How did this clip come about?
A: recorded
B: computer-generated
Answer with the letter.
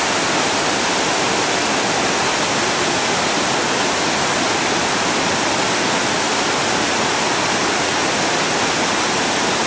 A